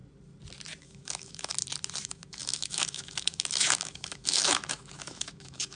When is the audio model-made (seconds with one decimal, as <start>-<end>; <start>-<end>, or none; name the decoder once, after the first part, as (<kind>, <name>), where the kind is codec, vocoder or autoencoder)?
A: 0.8-1.5 (autoencoder, DAC-VAE); 2.0-5.7